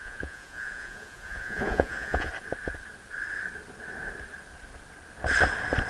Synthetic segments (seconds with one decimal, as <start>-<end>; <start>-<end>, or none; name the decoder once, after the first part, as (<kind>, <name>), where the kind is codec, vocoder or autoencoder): 0.0-2.3 (vocoder, Vocos)